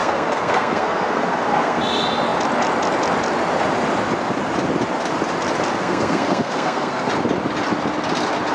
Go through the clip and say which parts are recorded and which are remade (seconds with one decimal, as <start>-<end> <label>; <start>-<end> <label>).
0.0-1.8 remade; 1.8-5.7 recorded; 5.7-7.1 remade; 7.1-8.5 recorded